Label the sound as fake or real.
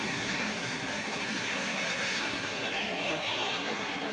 fake